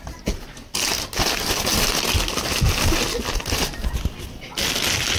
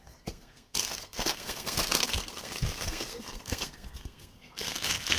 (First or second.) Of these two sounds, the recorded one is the first